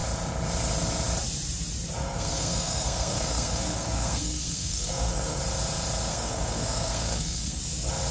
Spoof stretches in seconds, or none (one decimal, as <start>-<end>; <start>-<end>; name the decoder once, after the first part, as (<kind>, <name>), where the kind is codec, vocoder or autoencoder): 2.0-5.4 (codec, SNAC); 6.1-7.6